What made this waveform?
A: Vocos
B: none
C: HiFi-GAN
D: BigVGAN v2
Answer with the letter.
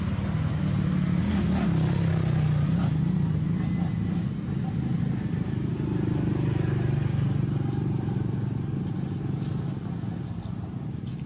B